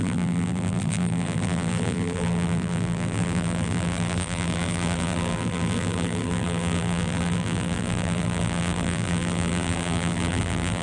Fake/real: fake